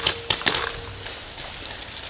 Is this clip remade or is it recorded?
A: recorded